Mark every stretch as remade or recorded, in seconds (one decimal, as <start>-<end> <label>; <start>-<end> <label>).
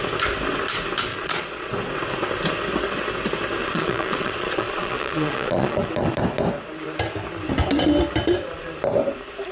0.0-1.1 recorded; 1.1-1.7 remade; 1.7-3.6 recorded; 3.6-6.2 remade; 6.2-9.5 recorded